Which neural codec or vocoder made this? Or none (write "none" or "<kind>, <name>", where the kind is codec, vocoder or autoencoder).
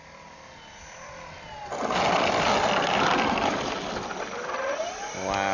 none